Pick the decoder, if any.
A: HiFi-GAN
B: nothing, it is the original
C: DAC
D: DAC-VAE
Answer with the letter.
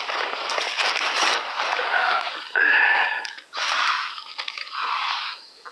C